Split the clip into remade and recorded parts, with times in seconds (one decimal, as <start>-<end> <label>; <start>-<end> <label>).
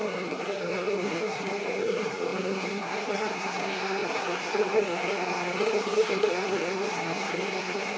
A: 0.0-8.0 remade